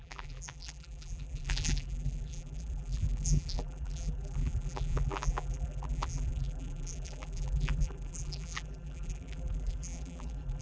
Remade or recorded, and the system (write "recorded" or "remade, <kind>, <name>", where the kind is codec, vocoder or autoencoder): remade, vocoder, BigVGAN v2